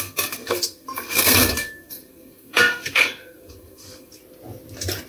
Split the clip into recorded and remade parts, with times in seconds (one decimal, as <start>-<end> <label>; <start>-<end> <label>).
0.0-4.2 remade; 4.2-5.1 recorded